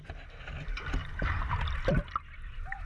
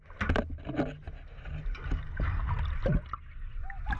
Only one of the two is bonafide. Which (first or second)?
second